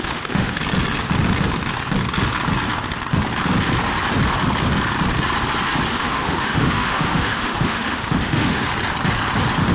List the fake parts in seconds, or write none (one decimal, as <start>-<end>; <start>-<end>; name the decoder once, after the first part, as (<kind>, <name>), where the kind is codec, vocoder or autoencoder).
0.0-0.6 (autoencoder, DAC-VAE); 5.9-8.7